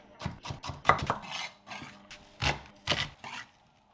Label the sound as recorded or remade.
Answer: recorded